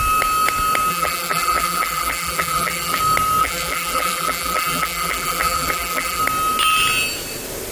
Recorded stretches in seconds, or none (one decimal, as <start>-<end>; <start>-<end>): 0.0-0.9; 3.0-3.4; 6.2-7.7